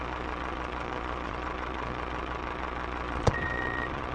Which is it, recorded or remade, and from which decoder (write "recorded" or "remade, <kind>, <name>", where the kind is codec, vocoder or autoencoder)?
remade, vocoder, Vocos